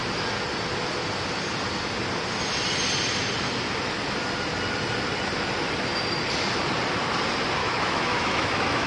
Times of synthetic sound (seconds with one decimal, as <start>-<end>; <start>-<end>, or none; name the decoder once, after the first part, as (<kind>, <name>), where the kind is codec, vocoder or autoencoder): 7.6-8.9 (autoencoder, DAC-VAE)